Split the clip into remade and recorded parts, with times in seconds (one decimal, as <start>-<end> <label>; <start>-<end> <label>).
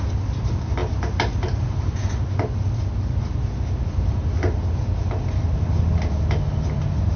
0.0-7.2 recorded